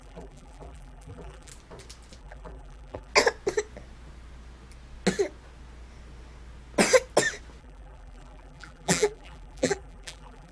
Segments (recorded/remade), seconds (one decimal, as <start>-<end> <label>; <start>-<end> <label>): 0.0-1.5 remade; 1.5-2.2 recorded; 2.2-3.1 remade; 3.1-7.6 recorded; 7.6-10.5 remade